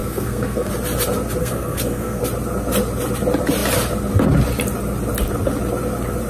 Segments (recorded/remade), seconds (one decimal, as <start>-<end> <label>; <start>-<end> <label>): 0.0-0.7 remade; 0.7-1.4 recorded; 1.4-2.2 remade; 2.2-6.3 recorded